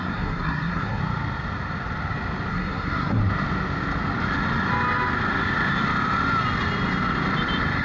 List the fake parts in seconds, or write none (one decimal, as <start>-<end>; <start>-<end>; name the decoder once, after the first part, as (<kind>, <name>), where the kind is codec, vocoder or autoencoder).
0.0-1.0 (codec, SNAC); 2.5-3.2